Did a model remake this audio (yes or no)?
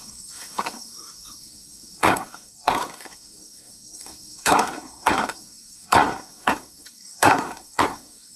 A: yes